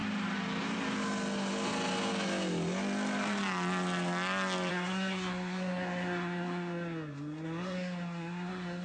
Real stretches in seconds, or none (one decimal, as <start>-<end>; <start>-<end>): 0.0-4.7